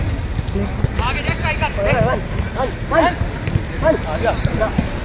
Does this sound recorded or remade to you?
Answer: recorded